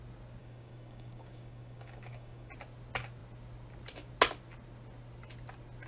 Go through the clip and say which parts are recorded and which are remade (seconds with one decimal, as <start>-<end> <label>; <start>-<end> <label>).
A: 0.0-0.4 recorded; 0.4-2.5 remade; 2.5-5.9 recorded